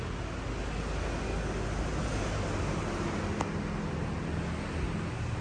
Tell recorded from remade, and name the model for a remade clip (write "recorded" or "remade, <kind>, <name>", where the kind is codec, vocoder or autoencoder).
recorded